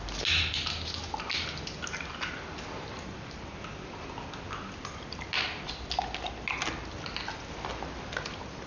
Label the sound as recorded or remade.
recorded